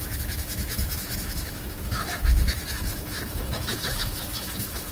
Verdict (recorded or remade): remade